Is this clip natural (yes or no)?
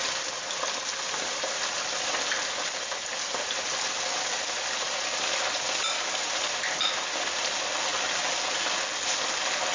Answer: yes